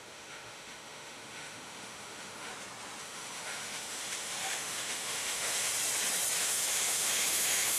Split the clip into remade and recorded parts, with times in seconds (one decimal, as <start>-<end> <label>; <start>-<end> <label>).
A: 0.0-2.5 remade; 2.5-3.0 recorded; 3.0-5.7 remade; 5.7-6.4 recorded; 6.4-7.8 remade